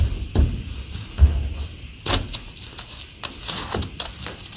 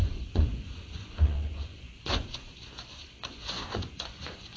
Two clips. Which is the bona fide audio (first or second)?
first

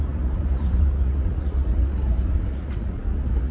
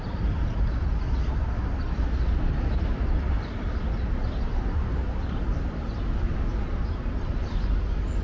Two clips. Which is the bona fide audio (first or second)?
second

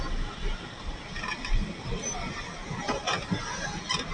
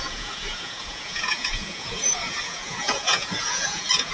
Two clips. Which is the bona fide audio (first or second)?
first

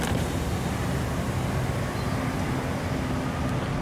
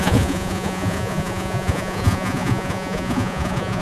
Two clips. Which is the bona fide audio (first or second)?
first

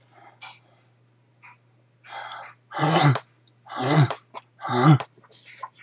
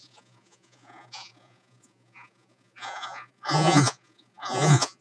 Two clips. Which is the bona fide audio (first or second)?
first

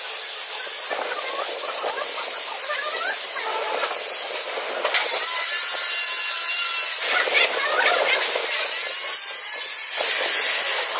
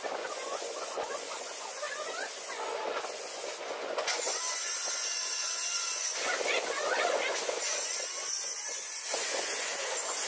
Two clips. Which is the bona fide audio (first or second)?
first